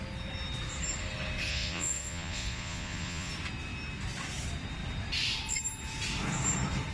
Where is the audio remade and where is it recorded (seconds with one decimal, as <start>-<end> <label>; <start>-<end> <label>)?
0.0-1.5 recorded; 1.5-3.3 remade; 3.3-6.9 recorded

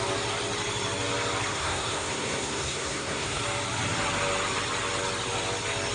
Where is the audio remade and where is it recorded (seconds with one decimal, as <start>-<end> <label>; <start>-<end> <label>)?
0.0-1.5 recorded; 1.5-3.4 remade; 3.4-5.9 recorded

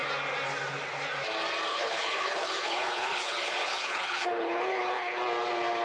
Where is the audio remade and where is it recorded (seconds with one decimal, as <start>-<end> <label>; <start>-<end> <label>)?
0.0-1.7 recorded; 1.7-5.2 remade; 5.2-5.8 recorded

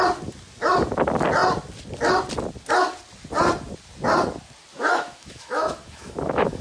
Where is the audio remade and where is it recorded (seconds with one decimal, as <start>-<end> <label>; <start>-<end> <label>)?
0.0-4.7 recorded; 4.7-6.6 remade

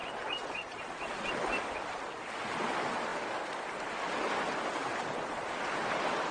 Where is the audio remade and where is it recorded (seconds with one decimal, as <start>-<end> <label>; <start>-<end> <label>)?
0.0-6.3 recorded

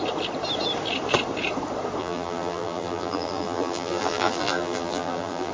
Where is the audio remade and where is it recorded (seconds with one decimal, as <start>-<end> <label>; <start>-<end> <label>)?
0.0-2.0 recorded; 2.0-5.5 remade

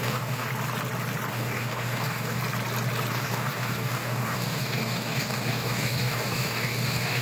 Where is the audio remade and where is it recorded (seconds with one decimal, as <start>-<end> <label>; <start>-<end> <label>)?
0.0-0.5 remade; 0.5-1.3 recorded; 1.3-2.4 remade; 2.4-3.1 recorded; 3.1-7.2 remade